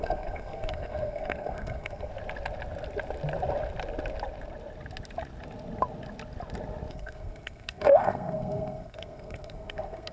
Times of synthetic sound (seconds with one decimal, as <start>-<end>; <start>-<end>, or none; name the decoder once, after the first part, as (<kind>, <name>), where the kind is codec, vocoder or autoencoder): 0.0-2.1 (codec, SNAC); 6.9-10.1

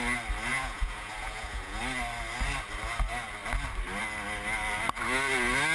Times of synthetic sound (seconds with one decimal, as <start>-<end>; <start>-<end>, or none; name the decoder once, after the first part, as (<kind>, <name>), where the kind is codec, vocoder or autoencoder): 0.5-1.8 (vocoder, Vocos)

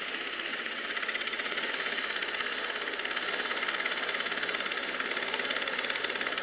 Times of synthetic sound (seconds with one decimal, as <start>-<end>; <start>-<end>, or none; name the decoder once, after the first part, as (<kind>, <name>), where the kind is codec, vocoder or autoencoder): 0.5-1.7 (vocoder, WaveNeXt)

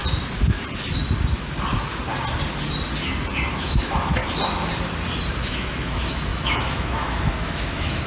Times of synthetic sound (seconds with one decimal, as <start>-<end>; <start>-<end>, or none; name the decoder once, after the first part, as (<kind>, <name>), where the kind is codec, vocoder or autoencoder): 3.5-4.2 (autoencoder, DAC-VAE); 5.3-8.1

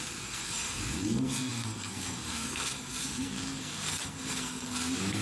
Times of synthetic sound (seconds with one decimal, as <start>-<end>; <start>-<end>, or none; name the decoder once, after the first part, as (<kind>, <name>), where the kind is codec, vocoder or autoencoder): 0.0-5.2 (codec, SNAC)

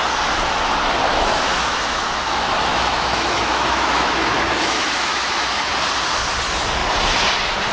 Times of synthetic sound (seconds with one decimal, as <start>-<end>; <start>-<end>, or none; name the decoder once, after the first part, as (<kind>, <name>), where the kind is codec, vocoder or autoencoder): 1.1-5.7 (autoencoder, DAC-VAE)